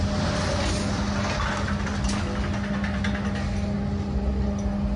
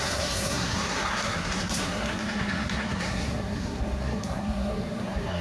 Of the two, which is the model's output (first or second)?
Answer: second